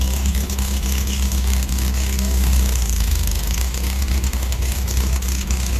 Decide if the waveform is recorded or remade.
remade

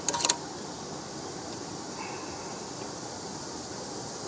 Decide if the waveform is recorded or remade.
recorded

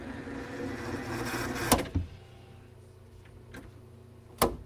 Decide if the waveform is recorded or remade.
recorded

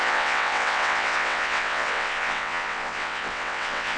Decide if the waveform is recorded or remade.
remade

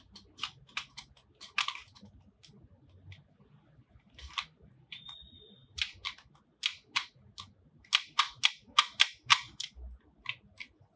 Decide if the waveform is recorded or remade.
recorded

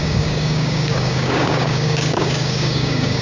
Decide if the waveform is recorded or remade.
remade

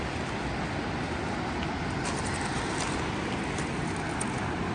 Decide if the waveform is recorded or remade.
recorded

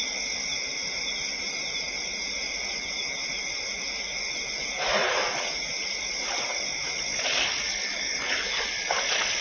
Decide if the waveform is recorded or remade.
recorded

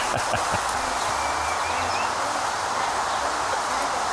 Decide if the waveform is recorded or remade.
recorded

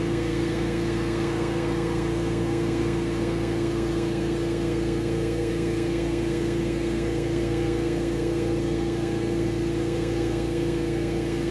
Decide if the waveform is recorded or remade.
remade